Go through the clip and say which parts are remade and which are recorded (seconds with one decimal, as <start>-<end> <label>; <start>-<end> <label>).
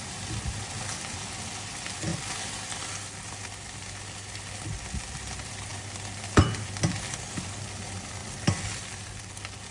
0.0-9.7 recorded